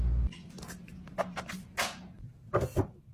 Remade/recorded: recorded